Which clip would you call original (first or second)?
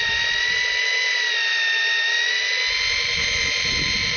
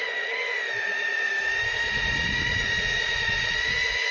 first